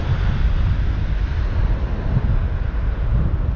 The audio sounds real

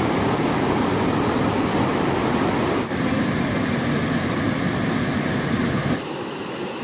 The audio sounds real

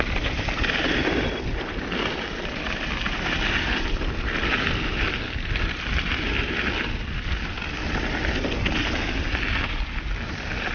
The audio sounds real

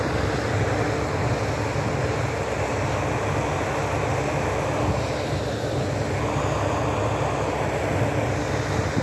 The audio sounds real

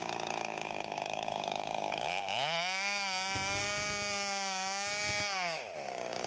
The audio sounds fake